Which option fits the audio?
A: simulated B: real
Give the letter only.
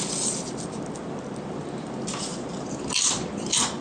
B